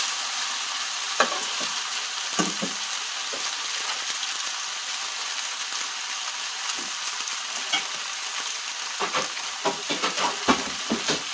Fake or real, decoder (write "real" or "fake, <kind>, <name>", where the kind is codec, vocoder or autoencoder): real